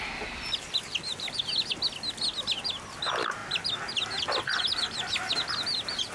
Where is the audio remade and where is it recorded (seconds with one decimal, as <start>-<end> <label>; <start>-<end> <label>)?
0.0-6.1 recorded